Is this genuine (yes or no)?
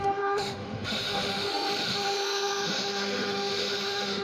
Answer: no